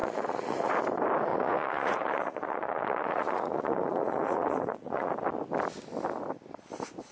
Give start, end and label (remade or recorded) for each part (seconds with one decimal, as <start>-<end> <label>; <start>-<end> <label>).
0.0-0.7 remade; 0.7-1.3 recorded; 1.3-5.1 remade; 5.1-7.1 recorded